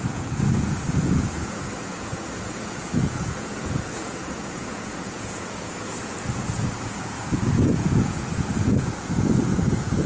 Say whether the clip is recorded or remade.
remade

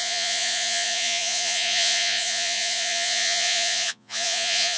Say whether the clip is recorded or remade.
remade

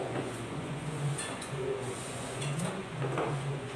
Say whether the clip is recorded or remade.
remade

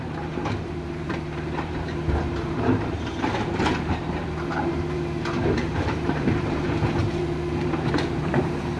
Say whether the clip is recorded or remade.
remade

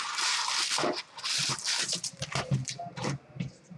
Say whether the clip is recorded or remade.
recorded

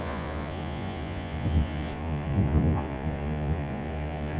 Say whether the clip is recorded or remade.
remade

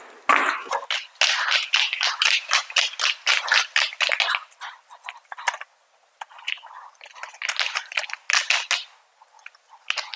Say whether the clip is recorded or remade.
recorded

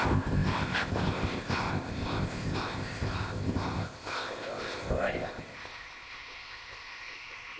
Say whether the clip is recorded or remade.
remade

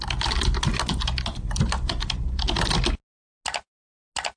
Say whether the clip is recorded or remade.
recorded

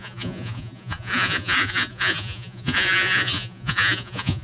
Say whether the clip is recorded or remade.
remade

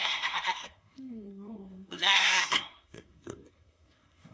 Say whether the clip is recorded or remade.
remade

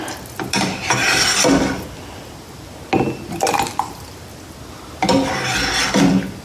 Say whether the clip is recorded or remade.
recorded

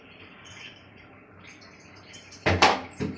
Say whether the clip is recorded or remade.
remade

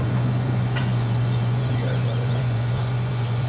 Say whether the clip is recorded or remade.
remade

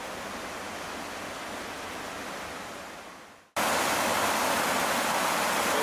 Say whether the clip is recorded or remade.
recorded